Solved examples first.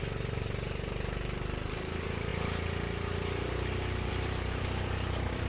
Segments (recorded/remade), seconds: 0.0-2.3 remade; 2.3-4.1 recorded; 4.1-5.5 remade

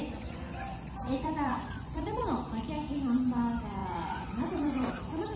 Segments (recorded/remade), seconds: 0.0-2.2 remade; 2.2-3.8 recorded; 3.8-4.9 remade; 4.9-5.4 recorded

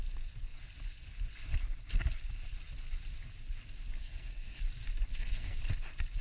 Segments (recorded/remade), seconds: 0.0-4.0 recorded; 4.0-4.6 remade; 4.6-5.1 recorded; 5.1-5.6 remade; 5.6-6.2 recorded

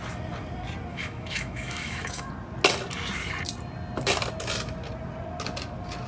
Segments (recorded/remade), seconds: 0.0-0.9 recorded; 0.9-2.3 remade; 2.3-6.1 recorded

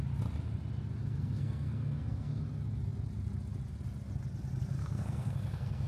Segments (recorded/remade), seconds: 0.0-1.0 recorded; 1.0-2.4 remade; 2.4-4.8 recorded; 4.8-5.9 remade

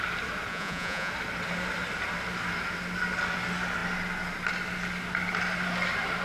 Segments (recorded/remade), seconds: 0.0-0.5 recorded; 0.5-1.1 remade; 1.1-6.2 recorded